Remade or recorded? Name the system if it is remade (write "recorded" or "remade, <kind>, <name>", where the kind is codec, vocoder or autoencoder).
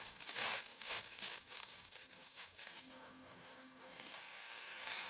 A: remade, codec, DAC